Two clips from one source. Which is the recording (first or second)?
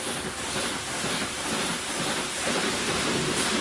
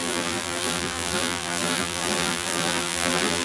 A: first